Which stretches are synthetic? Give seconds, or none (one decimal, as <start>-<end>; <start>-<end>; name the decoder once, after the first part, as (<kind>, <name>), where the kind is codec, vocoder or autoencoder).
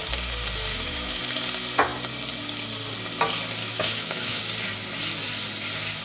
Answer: 0.7-1.2 (autoencoder, DAC-VAE); 3.6-4.4